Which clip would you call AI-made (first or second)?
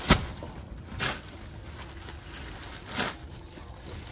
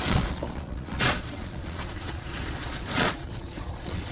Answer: second